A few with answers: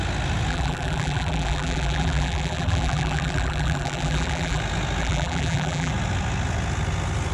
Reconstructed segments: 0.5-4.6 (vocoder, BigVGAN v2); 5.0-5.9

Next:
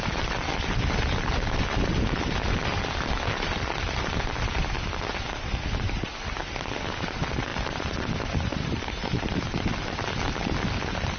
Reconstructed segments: none

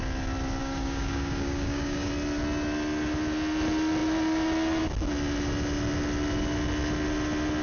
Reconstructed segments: 0.6-2.1 (codec, DAC)